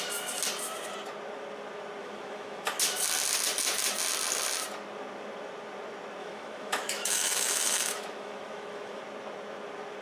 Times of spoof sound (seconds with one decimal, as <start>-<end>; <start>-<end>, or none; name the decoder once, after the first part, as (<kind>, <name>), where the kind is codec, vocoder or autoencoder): 2.0-2.7 (autoencoder, DAC-VAE); 6.2-9.0